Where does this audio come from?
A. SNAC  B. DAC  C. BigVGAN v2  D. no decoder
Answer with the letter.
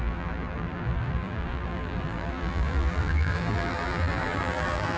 C